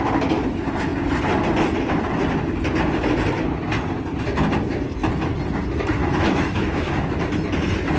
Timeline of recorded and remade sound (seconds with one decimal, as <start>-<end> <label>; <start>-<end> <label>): 0.0-6.0 recorded; 6.0-7.2 remade; 7.2-8.0 recorded